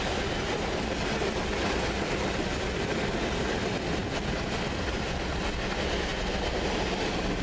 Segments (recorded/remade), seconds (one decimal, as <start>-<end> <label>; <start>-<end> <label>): 0.0-7.4 recorded